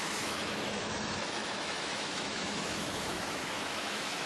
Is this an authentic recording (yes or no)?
no